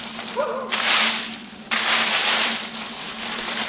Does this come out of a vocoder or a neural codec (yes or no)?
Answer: no